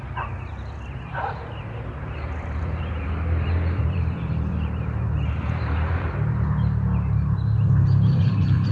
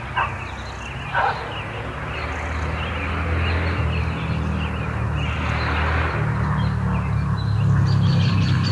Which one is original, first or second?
second